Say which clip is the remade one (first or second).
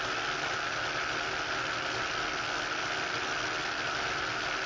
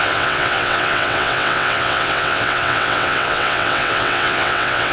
second